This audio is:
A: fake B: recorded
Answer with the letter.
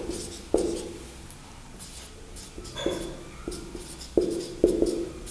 B